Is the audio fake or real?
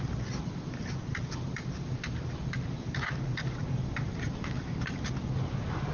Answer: real